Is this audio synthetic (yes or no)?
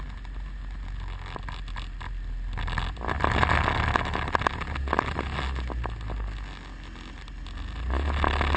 no